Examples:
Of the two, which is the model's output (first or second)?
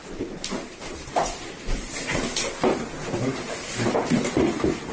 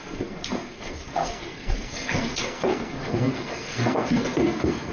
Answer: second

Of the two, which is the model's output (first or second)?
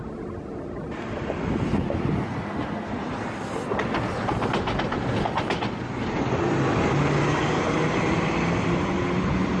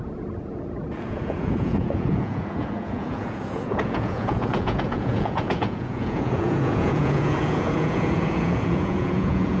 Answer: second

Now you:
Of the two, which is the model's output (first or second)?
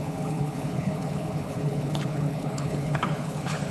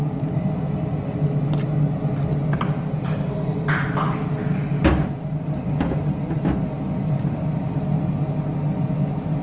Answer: first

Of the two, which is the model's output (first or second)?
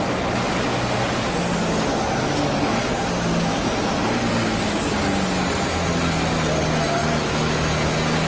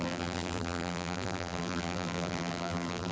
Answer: second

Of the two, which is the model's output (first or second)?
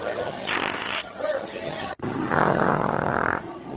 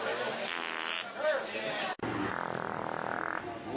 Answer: first